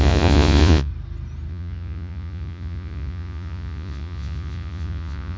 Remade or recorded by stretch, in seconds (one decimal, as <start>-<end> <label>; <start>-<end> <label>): 0.0-0.9 remade; 0.9-1.5 recorded; 1.5-5.4 remade